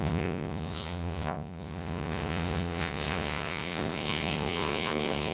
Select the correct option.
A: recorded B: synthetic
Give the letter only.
B